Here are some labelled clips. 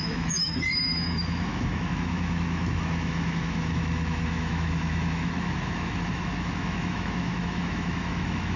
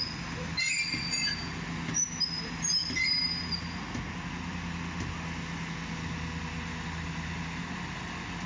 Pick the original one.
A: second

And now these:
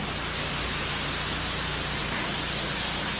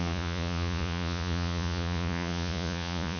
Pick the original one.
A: first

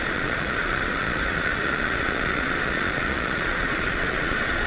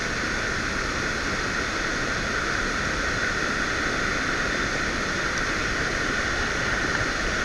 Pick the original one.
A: second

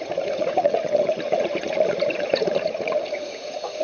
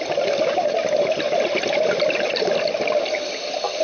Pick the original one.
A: second